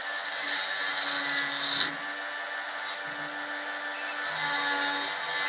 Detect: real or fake real